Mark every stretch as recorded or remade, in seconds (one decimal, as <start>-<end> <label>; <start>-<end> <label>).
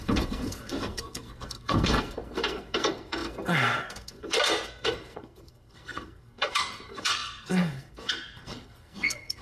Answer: 0.0-9.4 remade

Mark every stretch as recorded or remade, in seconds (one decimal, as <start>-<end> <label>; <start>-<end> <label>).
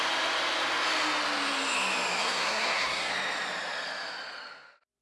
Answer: 0.0-2.2 recorded; 2.2-3.1 remade; 3.1-5.0 recorded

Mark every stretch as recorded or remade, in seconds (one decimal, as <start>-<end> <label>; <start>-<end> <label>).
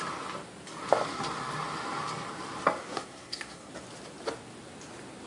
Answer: 0.0-2.8 recorded; 2.8-3.7 remade; 3.7-5.3 recorded